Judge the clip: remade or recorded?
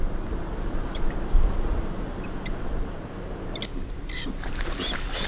recorded